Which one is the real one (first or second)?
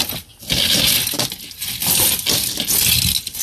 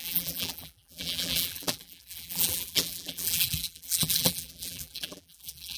first